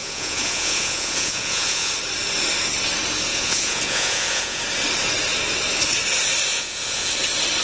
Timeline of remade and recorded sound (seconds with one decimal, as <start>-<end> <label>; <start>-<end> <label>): 0.0-1.9 remade; 1.9-3.3 recorded; 3.3-4.6 remade; 4.6-6.5 recorded; 6.5-7.1 remade; 7.1-7.6 recorded